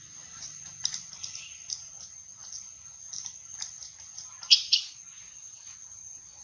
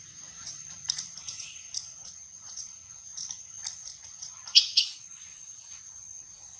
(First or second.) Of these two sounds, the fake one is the second